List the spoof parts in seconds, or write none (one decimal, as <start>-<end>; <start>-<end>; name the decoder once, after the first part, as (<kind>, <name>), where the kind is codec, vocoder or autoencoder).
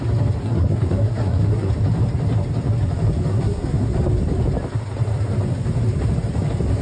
0.4-1.7 (codec, SNAC); 3.3-3.9